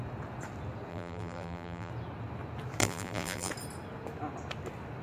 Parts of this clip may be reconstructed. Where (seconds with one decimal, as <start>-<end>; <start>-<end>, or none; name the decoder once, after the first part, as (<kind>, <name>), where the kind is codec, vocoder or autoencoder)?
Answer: 0.9-1.9 (vocoder, BigVGAN v2); 2.8-3.5